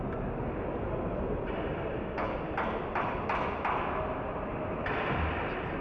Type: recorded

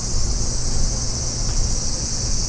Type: recorded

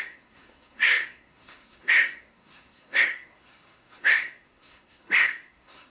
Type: remade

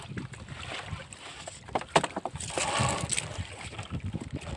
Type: recorded